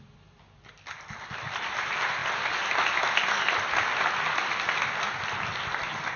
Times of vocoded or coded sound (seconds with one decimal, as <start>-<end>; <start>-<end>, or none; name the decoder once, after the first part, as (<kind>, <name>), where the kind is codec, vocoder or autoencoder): none